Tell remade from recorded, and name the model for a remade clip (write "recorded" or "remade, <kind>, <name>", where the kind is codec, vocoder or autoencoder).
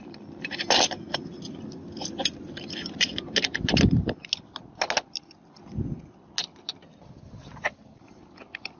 recorded